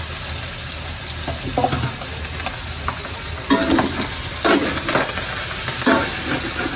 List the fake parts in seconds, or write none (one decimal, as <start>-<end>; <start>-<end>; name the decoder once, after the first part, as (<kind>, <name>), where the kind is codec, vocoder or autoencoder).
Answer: none